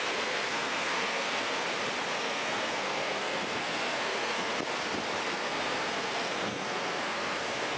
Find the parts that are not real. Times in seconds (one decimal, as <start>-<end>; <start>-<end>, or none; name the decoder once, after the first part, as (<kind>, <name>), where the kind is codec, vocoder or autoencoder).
0.0-1.6 (codec, SNAC); 2.2-4.5; 5.3-7.8